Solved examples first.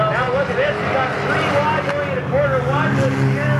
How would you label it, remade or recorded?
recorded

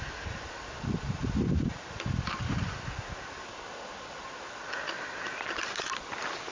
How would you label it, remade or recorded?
recorded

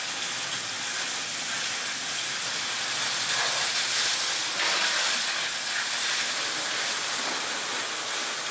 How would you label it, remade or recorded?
recorded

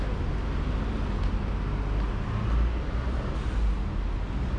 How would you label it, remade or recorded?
recorded